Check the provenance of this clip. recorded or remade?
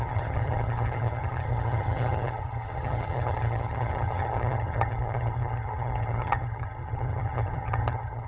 remade